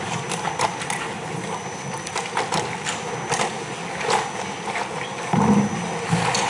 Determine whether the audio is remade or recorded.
recorded